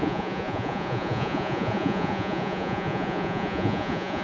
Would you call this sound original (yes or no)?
no